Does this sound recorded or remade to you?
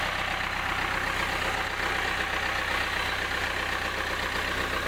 recorded